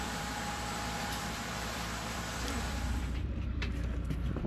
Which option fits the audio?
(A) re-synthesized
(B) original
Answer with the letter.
A